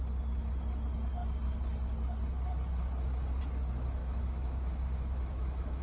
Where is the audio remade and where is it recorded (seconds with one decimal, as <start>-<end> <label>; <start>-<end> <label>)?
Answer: 0.0-4.0 recorded; 4.0-5.8 remade